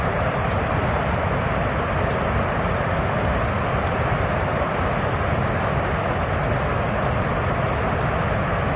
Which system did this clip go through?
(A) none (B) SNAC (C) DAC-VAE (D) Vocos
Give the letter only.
A